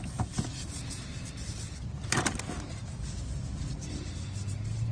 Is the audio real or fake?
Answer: real